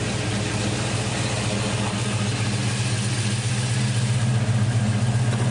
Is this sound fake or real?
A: real